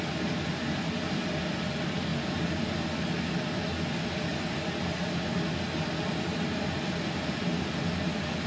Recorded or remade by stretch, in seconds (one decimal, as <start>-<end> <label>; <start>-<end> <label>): 0.0-4.3 recorded; 4.3-6.8 remade; 6.8-8.5 recorded